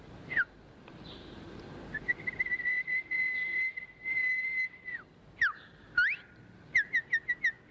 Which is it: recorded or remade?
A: recorded